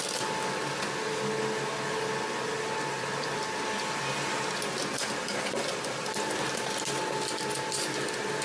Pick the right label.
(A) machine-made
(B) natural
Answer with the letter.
B